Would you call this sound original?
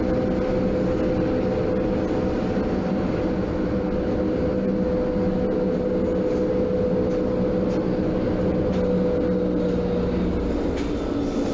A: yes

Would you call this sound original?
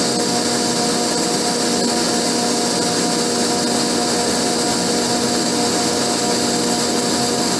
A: yes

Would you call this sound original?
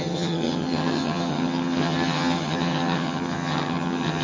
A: no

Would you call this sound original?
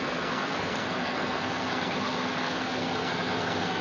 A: no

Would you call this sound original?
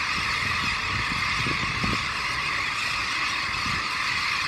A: yes